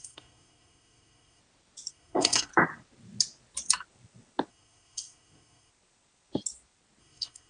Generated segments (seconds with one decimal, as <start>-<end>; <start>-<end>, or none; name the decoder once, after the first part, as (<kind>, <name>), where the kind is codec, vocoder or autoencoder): 0.0-1.4 (codec, SNAC); 1.9-2.5; 4.5-5.7; 7.0-7.5